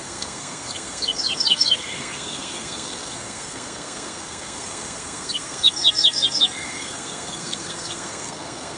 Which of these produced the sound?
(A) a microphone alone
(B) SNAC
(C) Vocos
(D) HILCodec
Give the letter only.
B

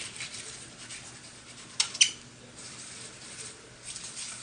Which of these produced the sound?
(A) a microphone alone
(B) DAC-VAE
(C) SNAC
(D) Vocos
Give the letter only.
A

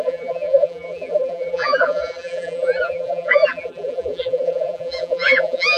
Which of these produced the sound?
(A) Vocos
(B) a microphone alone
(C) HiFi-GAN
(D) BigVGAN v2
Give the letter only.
D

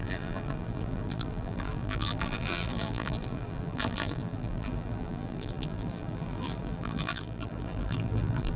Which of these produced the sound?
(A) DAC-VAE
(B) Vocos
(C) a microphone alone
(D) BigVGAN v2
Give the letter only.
D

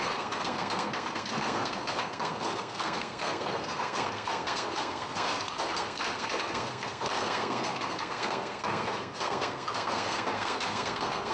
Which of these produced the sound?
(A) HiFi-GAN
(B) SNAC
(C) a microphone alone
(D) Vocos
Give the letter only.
B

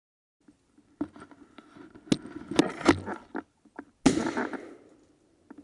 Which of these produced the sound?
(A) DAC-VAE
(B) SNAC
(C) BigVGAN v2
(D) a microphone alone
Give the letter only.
D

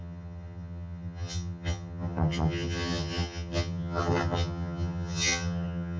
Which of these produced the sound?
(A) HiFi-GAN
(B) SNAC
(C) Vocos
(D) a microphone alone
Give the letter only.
A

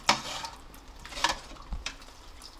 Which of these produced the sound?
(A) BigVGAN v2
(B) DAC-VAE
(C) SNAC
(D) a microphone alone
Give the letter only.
A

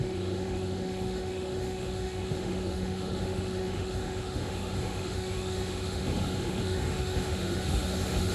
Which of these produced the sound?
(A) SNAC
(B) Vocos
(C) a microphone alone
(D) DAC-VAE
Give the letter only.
D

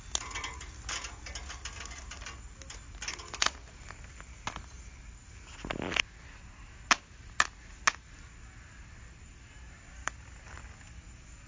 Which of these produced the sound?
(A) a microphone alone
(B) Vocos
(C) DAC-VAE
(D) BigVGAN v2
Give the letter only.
A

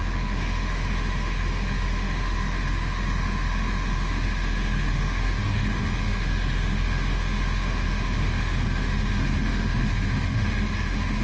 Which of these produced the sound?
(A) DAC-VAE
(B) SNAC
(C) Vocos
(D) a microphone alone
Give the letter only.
A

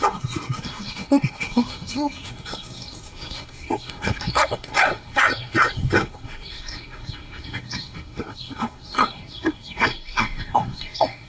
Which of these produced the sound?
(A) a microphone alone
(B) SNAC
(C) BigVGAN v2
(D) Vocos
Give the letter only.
B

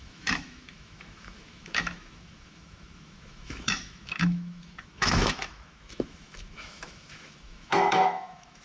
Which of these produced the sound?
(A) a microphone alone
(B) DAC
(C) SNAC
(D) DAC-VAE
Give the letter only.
D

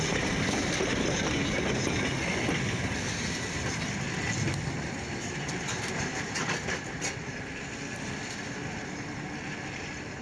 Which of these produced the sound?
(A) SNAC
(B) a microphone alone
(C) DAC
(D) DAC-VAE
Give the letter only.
B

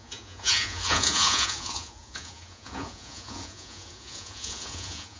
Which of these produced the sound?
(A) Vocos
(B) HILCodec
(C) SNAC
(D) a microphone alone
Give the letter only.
A